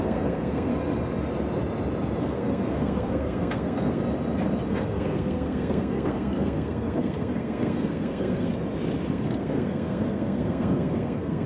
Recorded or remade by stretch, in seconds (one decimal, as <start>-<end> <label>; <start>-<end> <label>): 0.0-0.7 remade; 0.7-2.2 recorded; 2.2-4.0 remade; 4.0-4.7 recorded; 4.7-8.5 remade; 8.5-9.1 recorded; 9.1-11.5 remade